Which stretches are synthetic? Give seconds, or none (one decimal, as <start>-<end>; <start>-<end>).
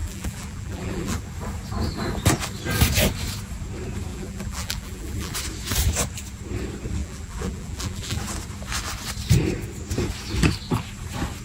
0.0-1.2; 4.1-5.3; 7.0-8.2